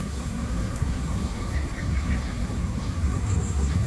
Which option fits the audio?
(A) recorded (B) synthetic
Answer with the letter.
B